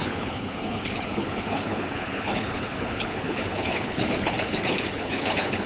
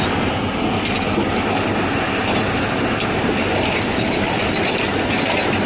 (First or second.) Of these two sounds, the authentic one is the second